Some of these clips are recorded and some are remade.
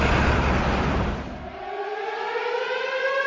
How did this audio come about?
recorded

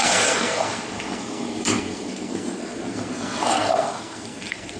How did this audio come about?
remade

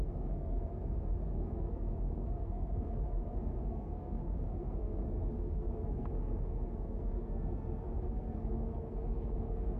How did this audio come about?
remade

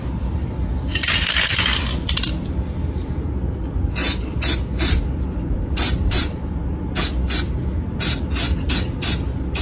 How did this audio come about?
recorded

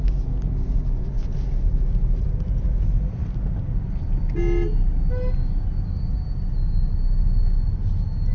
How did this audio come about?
recorded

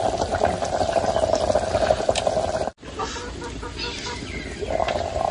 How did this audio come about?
recorded